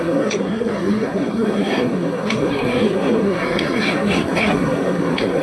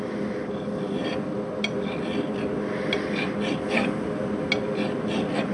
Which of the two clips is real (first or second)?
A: second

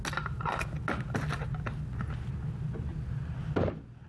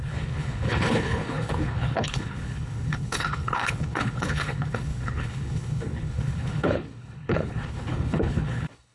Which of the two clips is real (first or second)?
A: first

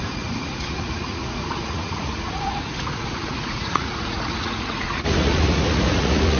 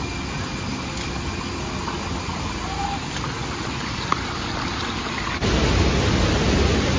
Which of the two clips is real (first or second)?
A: second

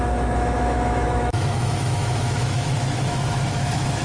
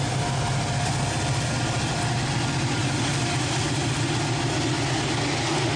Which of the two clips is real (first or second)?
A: second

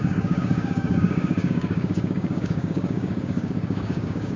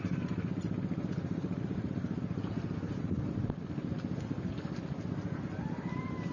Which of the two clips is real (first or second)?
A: second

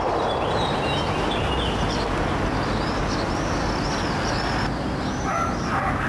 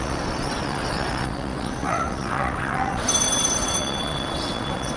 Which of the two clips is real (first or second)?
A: first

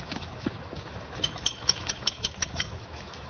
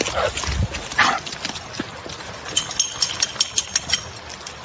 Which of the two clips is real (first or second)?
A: second